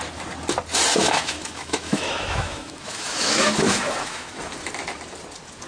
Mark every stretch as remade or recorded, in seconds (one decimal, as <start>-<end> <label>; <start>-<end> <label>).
0.0-1.0 recorded; 1.0-4.3 remade; 4.3-5.7 recorded